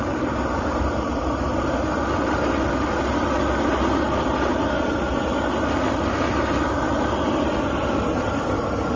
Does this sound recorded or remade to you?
recorded